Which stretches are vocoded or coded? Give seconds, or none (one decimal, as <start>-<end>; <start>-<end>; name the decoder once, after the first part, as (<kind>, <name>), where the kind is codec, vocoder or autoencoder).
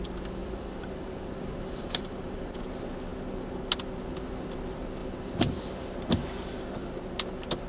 0.4-2.6 (vocoder, BigVGAN v2); 5.0-5.7